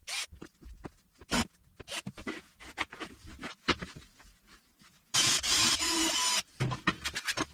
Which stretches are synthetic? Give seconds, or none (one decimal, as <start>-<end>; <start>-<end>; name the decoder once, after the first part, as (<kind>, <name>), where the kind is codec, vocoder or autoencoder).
2.2-6.0 (vocoder, Vocos)